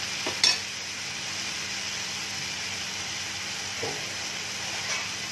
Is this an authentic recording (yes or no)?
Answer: yes